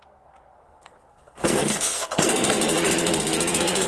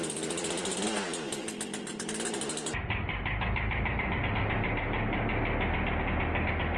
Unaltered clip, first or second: second